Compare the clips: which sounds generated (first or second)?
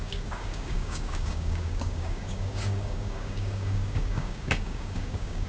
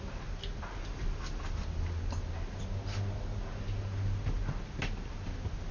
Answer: first